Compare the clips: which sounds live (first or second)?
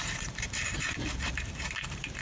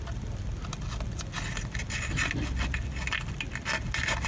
second